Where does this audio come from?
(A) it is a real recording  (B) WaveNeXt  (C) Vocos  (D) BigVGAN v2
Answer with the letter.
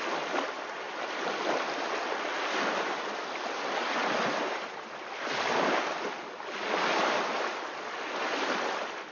A